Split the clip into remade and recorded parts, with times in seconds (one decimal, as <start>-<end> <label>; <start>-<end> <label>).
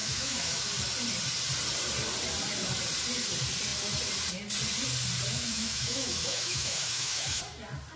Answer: 0.0-0.6 remade; 0.6-5.3 recorded; 5.3-7.4 remade; 7.4-8.0 recorded